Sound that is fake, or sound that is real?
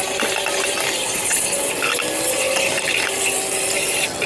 real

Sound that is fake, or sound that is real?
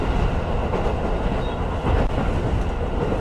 real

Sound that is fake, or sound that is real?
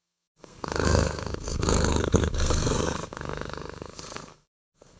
fake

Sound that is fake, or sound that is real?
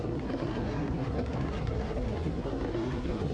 fake